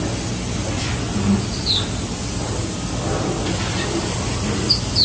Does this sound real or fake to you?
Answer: real